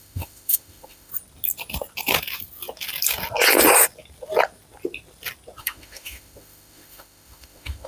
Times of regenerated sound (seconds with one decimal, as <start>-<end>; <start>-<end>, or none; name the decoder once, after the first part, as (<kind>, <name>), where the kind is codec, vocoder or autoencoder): 0.0-1.1 (autoencoder, DAC-VAE); 5.6-7.9

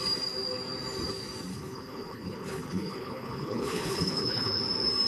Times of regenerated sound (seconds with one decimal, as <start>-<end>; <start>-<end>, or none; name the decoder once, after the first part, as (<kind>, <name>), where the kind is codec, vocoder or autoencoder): 1.5-4.6 (codec, HILCodec)

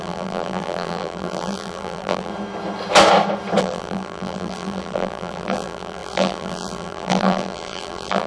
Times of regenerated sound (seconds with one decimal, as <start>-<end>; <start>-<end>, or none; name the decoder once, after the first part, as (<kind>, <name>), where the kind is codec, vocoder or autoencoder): 0.0-2.3 (vocoder, BigVGAN v2); 3.6-8.3

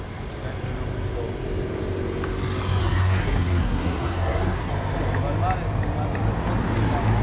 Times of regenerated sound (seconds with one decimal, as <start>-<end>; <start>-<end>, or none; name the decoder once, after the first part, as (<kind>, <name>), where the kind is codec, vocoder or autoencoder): 2.8-4.7 (codec, SNAC)

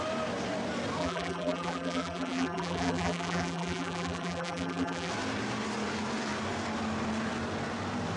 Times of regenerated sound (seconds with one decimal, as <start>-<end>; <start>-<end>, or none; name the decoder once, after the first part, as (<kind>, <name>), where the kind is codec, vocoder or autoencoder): 1.0-5.1 (vocoder, BigVGAN v2)

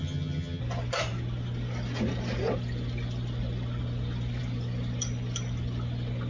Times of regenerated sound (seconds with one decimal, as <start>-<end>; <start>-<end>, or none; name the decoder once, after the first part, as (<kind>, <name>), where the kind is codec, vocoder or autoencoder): 0.0-0.6 (vocoder, HiFi-GAN)

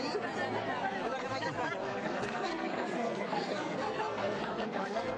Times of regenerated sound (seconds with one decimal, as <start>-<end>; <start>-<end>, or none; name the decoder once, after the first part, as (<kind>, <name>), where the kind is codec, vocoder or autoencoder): 1.8-5.2 (codec, SNAC)